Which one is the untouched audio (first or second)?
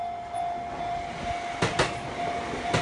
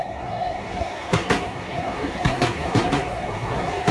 first